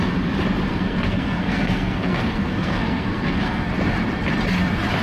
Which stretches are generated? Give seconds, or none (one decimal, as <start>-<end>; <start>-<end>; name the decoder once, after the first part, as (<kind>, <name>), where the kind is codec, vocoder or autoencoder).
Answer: 0.7-3.7 (codec, SNAC)